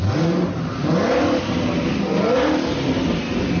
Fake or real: real